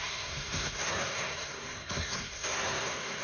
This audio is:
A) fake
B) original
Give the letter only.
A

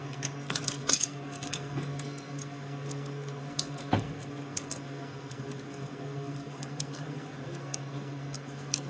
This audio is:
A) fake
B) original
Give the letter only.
A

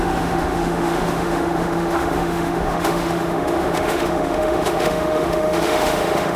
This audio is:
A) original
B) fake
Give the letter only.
B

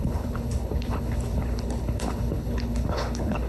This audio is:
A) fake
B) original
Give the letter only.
A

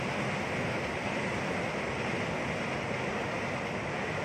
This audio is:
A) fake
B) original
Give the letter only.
B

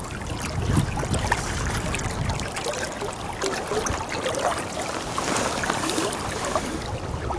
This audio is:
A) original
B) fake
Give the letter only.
A